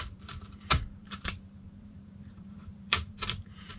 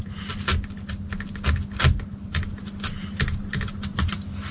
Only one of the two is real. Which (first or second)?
second